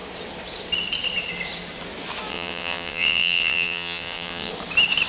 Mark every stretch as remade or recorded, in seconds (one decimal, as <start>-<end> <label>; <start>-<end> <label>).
0.0-2.3 recorded; 2.3-4.5 remade; 4.5-5.1 recorded

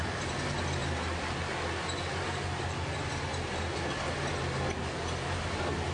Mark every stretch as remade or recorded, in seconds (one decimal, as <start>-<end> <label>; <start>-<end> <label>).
0.0-5.9 recorded

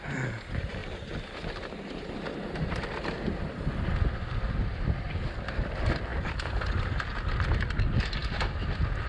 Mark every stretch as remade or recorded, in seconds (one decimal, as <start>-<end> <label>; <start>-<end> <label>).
0.0-9.1 recorded

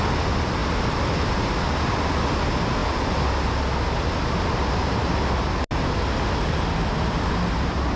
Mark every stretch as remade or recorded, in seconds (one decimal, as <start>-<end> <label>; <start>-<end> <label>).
0.0-8.0 recorded

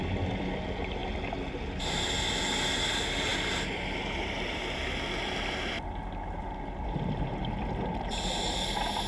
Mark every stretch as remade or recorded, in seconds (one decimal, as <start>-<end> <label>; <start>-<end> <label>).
0.0-9.1 recorded

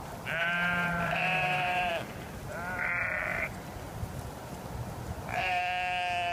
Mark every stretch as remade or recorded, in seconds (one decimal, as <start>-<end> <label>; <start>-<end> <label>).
0.0-0.4 recorded; 0.4-1.9 remade; 1.9-3.3 recorded; 3.3-5.6 remade; 5.6-6.3 recorded